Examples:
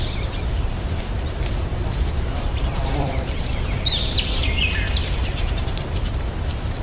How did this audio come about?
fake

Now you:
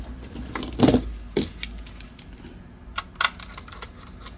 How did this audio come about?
real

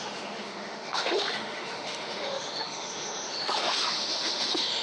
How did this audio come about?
fake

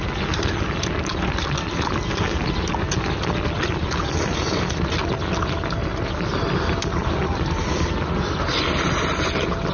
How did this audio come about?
real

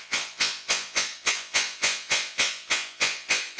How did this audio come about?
fake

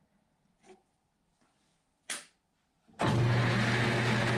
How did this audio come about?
real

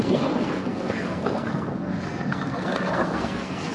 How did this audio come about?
fake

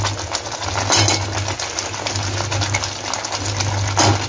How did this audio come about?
real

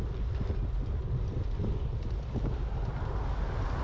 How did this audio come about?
real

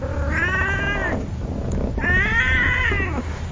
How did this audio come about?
real